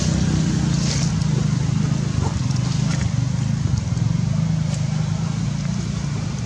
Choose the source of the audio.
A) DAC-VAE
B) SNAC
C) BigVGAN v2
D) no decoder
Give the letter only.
D